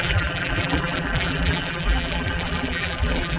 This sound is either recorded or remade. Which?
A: remade